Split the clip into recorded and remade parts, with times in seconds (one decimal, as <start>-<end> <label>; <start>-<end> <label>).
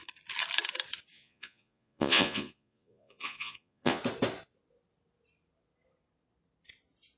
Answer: 0.0-1.1 recorded; 1.1-4.0 remade; 4.0-7.2 recorded